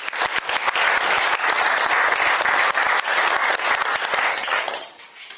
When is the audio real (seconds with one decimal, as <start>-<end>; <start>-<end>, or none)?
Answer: 0.0-4.3; 5.0-5.4